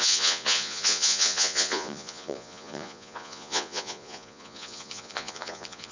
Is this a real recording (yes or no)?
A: no